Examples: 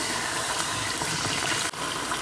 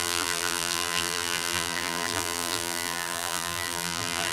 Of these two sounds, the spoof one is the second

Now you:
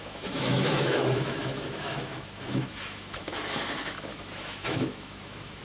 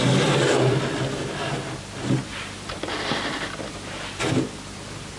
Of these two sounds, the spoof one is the first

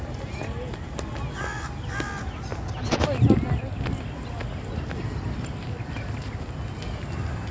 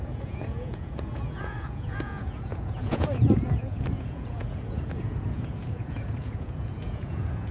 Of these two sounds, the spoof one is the second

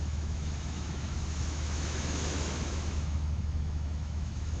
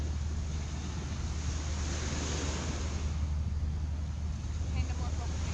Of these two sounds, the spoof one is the first